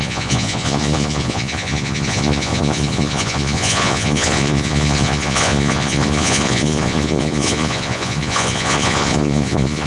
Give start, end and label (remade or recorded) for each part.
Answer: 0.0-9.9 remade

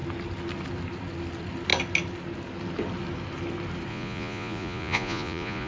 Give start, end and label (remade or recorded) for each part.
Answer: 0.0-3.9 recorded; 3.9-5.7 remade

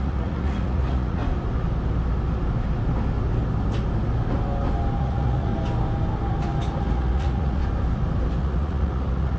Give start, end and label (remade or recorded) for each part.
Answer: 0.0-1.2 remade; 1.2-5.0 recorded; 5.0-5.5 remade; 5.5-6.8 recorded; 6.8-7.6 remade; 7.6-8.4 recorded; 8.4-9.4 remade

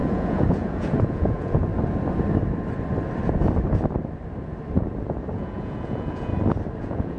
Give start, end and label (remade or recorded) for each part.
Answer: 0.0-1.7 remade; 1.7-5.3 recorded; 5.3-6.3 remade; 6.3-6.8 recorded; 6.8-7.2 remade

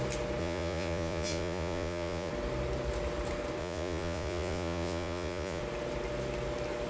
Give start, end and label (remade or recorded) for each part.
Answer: 0.0-0.4 recorded; 0.4-2.3 remade; 2.3-3.6 recorded; 3.6-5.6 remade; 5.6-6.9 recorded

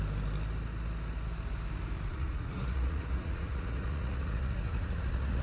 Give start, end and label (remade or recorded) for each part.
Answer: 0.0-2.1 recorded; 2.1-5.4 remade